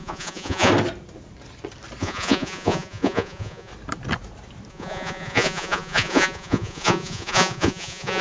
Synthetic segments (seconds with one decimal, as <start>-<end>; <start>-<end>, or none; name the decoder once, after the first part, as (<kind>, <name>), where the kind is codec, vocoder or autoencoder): 0.0-0.7 (vocoder, Vocos); 2.0-3.7; 4.7-8.2